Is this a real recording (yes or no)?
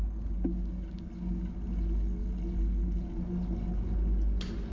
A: yes